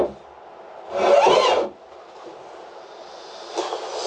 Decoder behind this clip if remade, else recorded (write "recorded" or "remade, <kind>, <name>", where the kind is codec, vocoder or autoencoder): recorded